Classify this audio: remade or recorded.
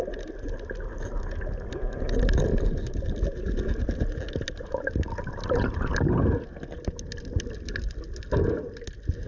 recorded